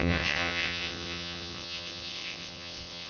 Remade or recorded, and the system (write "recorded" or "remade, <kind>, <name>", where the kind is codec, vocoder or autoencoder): remade, vocoder, WaveNeXt